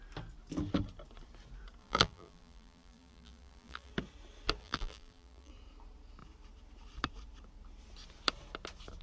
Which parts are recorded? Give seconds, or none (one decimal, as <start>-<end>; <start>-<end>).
0.0-1.8; 3.9-4.6; 5.5-9.0